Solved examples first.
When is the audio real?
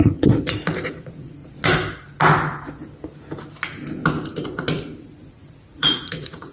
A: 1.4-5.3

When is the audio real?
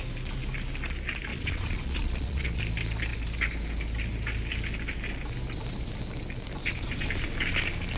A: 0.0-1.3; 2.6-8.0